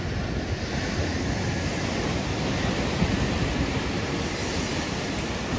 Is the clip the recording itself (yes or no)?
yes